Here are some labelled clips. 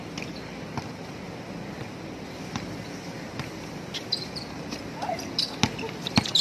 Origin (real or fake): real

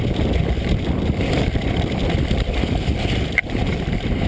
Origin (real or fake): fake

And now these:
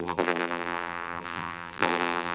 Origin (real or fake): fake